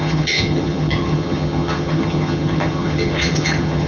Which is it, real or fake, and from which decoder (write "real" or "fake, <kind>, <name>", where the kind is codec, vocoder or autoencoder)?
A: fake, vocoder, HiFi-GAN